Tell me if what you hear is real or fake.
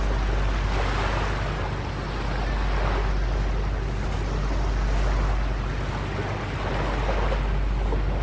real